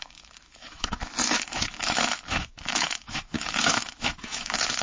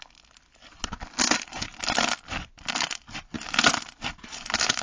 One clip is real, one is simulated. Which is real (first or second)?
second